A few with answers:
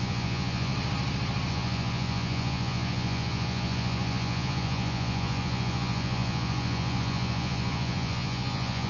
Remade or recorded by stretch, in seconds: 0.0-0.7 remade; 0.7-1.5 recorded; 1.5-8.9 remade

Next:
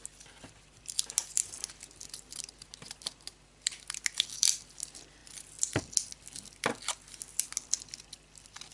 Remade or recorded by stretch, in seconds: 0.0-8.7 recorded

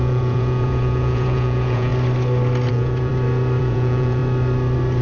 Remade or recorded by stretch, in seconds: 0.0-1.9 remade; 1.9-2.7 recorded; 2.7-3.1 remade; 3.1-3.6 recorded; 3.6-4.2 remade; 4.2-5.0 recorded